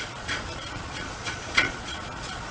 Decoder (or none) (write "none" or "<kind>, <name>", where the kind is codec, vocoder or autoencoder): vocoder, Vocos